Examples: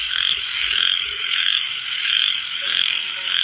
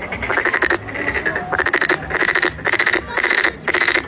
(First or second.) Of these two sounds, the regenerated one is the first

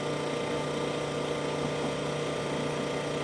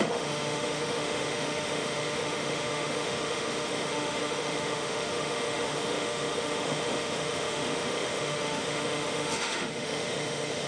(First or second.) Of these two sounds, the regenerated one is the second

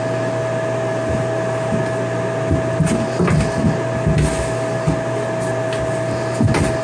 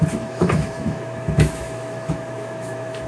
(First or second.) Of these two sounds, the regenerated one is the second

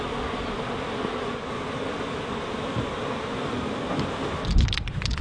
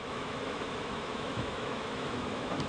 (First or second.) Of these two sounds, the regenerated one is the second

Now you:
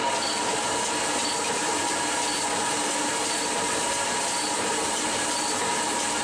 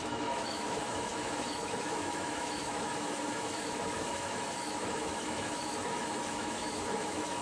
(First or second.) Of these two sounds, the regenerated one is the second